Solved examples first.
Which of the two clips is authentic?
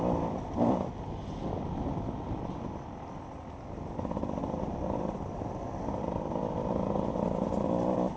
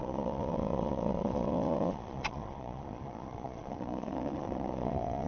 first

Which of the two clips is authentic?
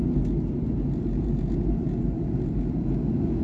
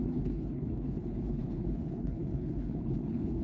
first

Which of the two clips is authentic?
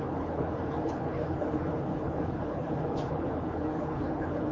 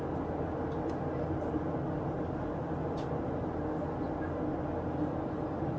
second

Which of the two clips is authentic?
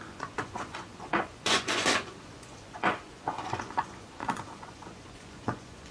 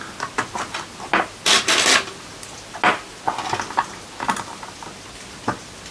second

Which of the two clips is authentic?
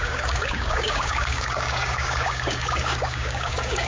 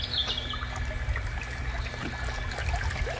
second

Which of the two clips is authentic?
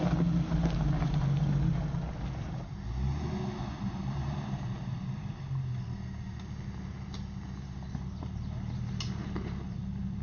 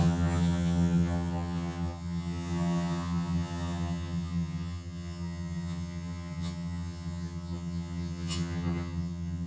first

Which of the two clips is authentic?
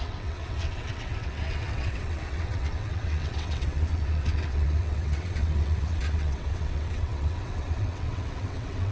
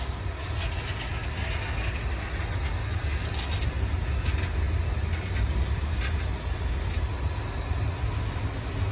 second